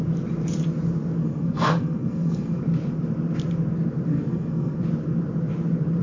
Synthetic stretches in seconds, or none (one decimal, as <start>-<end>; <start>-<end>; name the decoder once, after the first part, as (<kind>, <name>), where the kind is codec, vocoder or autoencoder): 1.2-2.6 (codec, SNAC); 4.1-4.8